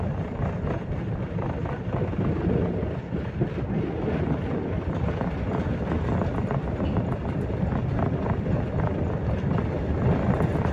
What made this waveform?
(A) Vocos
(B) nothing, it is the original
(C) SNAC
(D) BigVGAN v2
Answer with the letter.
B